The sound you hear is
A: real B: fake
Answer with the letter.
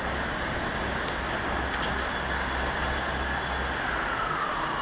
A